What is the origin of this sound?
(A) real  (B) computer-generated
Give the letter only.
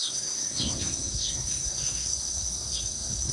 B